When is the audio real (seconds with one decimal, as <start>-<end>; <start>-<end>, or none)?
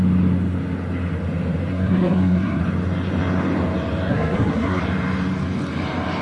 0.0-1.7; 2.6-4.1; 4.8-6.2